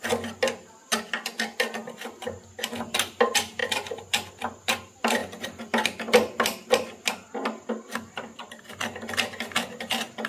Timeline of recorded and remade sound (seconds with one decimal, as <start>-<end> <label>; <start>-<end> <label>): 0.0-10.3 recorded